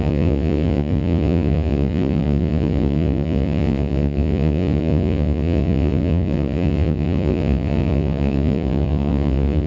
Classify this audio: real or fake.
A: fake